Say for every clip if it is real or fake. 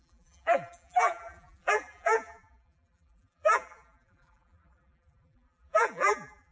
fake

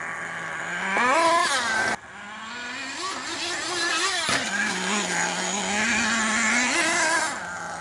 real